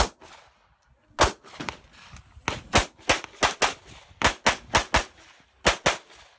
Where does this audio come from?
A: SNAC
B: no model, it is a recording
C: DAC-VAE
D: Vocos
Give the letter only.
B